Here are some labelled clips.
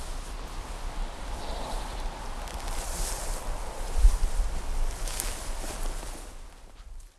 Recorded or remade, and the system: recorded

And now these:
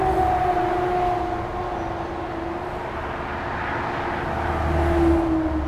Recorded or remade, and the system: recorded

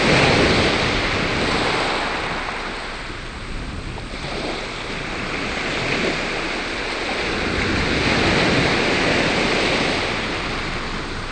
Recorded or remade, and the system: recorded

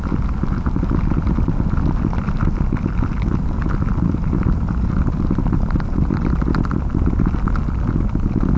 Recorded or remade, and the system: recorded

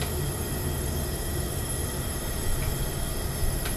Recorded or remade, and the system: recorded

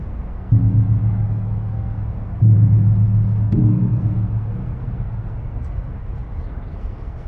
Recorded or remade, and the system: remade, codec, SNAC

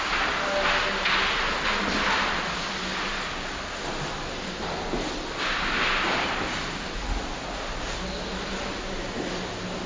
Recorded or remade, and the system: recorded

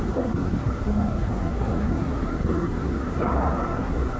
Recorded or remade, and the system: remade, codec, SNAC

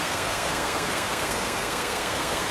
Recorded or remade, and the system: remade, codec, SNAC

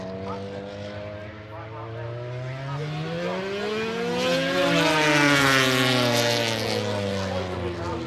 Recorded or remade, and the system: recorded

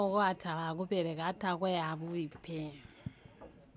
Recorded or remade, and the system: recorded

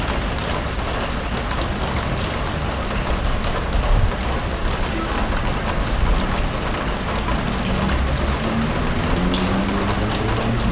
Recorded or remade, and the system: recorded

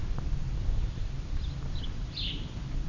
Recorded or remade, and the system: recorded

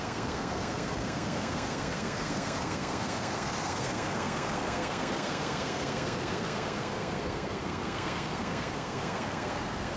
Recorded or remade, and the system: remade, codec, SNAC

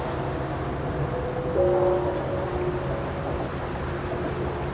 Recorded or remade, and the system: recorded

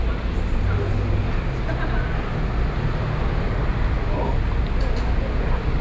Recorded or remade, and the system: recorded